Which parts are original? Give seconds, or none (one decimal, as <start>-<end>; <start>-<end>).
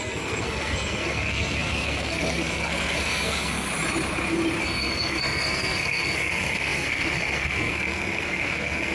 3.7-4.6